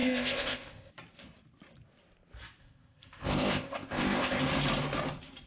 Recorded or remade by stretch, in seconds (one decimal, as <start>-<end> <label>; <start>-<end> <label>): 0.0-0.9 remade; 0.9-2.6 recorded; 2.6-4.4 remade; 4.4-5.5 recorded